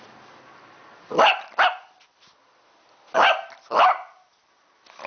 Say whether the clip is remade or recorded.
recorded